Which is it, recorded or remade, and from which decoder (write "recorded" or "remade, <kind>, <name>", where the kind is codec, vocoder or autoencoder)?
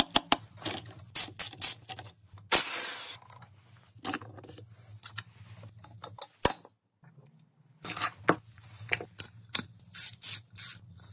recorded